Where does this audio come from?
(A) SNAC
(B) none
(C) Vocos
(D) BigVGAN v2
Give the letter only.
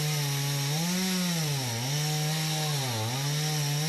B